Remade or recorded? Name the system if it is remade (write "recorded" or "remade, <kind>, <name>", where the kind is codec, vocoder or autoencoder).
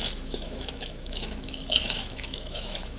remade, autoencoder, DAC-VAE